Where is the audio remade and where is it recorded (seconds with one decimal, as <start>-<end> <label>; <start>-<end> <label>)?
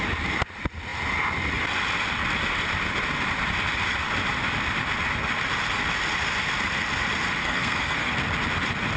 0.0-7.4 recorded; 7.4-8.1 remade; 8.1-9.0 recorded